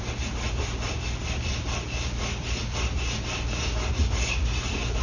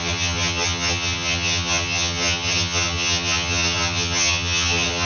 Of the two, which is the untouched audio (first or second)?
first